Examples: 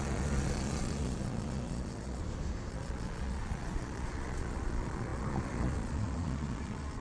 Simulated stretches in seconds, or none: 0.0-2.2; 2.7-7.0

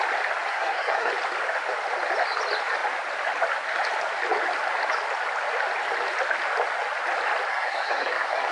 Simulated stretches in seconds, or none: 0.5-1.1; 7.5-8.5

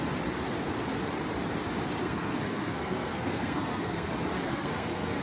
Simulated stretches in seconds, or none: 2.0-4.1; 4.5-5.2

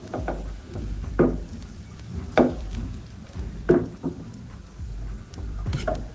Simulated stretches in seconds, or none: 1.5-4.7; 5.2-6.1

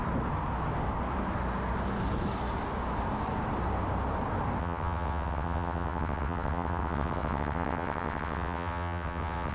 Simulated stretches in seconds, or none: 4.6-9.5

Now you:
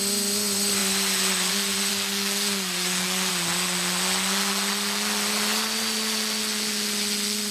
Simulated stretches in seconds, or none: 1.9-3.3